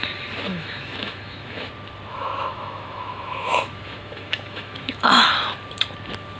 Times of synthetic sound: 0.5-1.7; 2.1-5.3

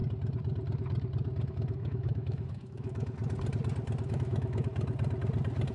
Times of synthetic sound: 1.5-3.2; 4.1-4.7

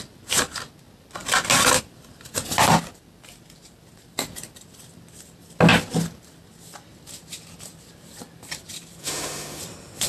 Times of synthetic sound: 9.0-9.6

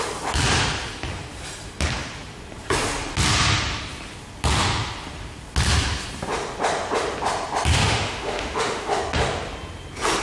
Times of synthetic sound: 7.7-9.0